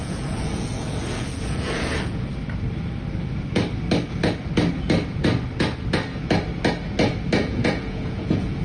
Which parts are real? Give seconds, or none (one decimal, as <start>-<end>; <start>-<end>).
2.3-7.4